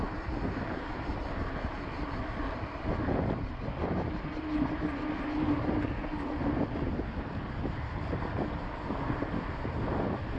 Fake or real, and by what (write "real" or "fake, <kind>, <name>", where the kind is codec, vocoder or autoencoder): real